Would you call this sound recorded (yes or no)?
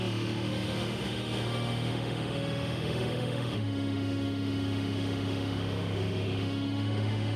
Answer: no